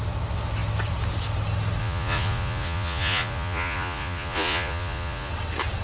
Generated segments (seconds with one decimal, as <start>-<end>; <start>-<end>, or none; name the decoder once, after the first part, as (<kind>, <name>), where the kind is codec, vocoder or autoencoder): 1.8-5.3 (vocoder, Vocos)